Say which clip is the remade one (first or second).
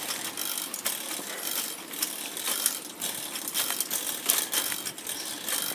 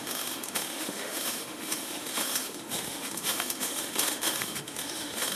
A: second